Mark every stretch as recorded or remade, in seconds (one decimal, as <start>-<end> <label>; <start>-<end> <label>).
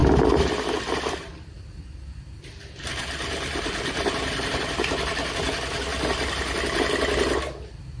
0.0-8.0 recorded